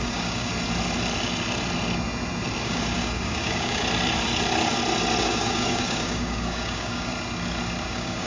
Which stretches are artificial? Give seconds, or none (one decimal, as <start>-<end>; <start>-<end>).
0.0-0.5; 2.6-3.8; 5.2-7.1; 7.9-8.3